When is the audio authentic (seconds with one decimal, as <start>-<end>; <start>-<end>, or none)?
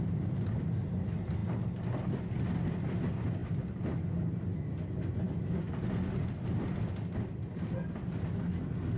0.0-9.0